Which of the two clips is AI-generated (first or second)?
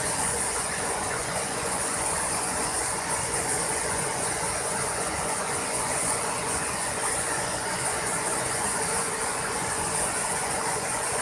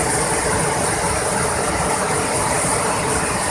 first